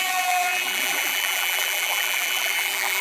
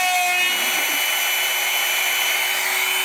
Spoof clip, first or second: first